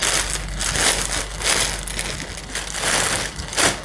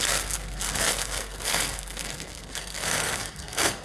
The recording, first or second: first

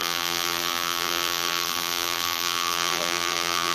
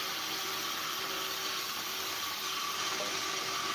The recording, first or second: second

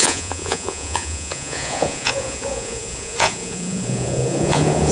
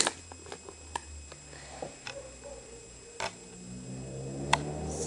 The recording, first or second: second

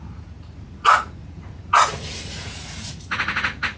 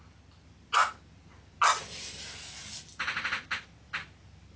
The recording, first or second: second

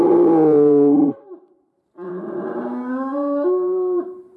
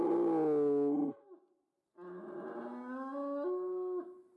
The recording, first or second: second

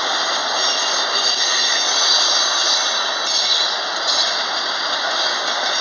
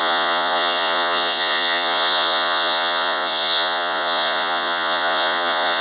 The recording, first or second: first